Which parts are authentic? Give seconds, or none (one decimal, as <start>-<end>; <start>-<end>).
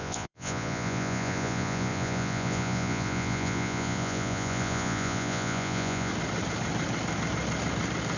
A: 6.1-8.2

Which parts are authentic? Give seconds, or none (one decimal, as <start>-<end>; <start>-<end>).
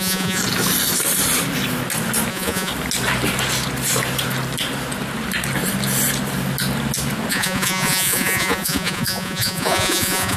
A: 0.4-2.3; 2.7-7.3